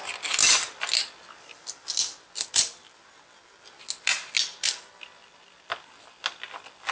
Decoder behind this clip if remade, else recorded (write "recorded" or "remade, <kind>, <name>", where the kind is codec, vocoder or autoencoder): recorded